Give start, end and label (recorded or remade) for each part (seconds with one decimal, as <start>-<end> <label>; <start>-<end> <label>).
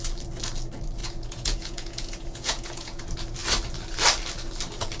0.0-1.0 recorded; 1.0-3.0 remade; 3.0-5.0 recorded